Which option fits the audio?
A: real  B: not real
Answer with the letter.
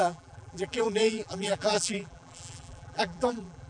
B